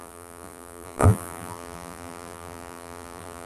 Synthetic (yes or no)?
yes